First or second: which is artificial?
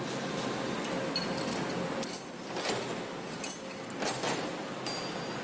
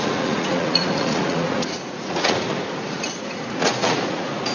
second